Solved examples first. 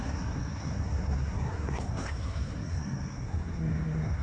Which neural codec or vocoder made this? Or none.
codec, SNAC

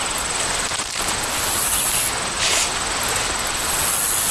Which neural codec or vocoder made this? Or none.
none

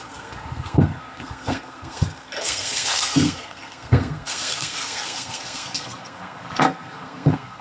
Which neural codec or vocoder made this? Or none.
codec, SNAC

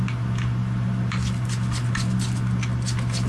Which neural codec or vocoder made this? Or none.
none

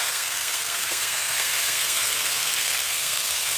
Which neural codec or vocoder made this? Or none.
codec, SNAC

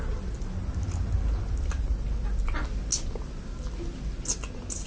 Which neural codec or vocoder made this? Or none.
none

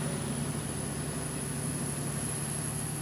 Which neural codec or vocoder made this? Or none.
none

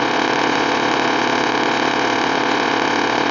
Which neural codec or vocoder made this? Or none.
vocoder, Vocos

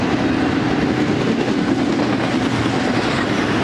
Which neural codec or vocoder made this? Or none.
none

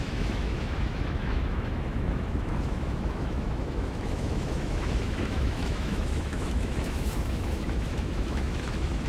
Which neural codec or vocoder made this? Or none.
autoencoder, DAC-VAE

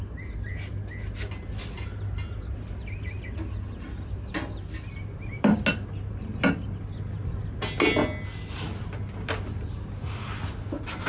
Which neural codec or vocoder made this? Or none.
none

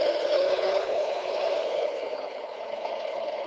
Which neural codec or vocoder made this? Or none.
codec, HILCodec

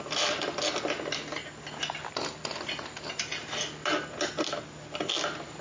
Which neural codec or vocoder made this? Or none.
none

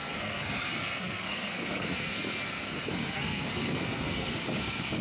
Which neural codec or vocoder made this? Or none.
codec, SNAC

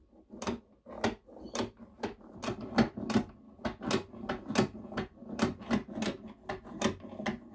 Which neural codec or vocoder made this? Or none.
none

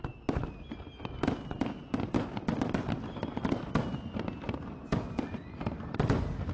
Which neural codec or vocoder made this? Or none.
none